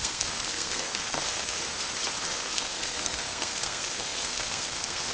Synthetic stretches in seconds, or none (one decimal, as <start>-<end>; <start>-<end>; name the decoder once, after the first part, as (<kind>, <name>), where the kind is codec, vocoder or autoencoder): 0.0-1.6 (codec, SNAC); 2.2-5.1